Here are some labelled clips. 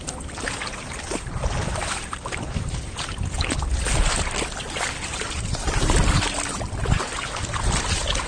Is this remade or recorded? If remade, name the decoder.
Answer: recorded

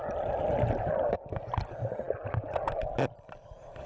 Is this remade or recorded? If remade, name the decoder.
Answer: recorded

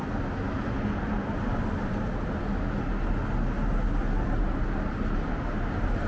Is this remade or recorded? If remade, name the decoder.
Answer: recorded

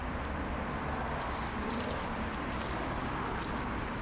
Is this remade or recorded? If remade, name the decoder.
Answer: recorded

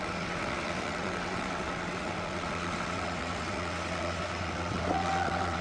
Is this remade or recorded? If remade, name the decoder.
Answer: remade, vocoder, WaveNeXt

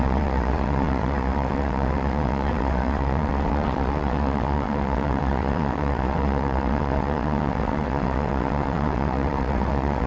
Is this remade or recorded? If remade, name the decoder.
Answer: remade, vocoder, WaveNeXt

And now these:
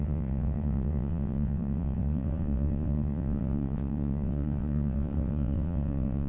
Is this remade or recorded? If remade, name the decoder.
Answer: remade, vocoder, WaveNeXt